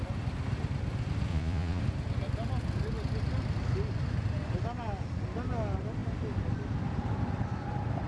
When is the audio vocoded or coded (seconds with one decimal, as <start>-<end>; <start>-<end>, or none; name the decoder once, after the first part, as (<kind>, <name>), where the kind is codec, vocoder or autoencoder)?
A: 1.3-1.8 (vocoder, Vocos)